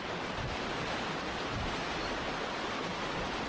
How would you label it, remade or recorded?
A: recorded